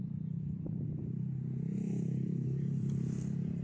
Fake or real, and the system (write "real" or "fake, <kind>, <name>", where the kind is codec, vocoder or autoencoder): fake, vocoder, BigVGAN v2